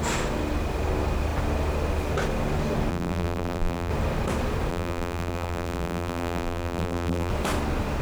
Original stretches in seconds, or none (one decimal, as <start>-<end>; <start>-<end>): 0.0-2.9; 3.9-4.7; 7.3-8.0